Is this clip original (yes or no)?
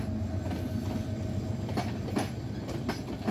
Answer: yes